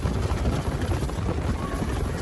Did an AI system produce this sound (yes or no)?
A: no